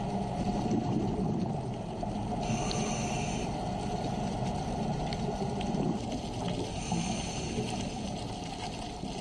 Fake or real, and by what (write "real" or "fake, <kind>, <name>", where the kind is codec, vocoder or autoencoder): real